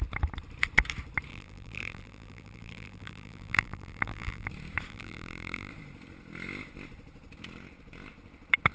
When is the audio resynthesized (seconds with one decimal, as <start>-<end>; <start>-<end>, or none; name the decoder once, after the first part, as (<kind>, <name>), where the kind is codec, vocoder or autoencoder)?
1.3-4.5 (vocoder, BigVGAN v2); 4.9-5.7